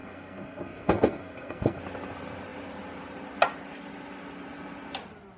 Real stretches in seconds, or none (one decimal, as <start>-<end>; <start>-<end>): 1.8-5.4